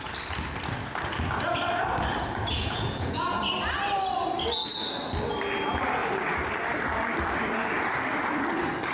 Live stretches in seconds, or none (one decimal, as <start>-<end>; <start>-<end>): 0.0-2.6; 3.4-8.9